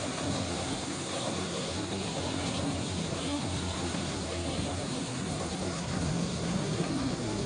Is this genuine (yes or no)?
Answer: no